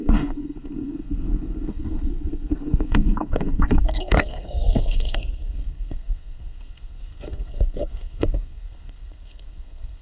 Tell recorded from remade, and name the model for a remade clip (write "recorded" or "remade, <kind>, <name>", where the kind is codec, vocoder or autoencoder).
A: remade, codec, SNAC